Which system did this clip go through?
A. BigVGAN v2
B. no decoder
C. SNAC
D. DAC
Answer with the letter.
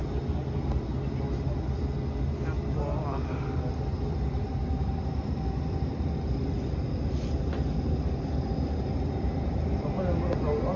B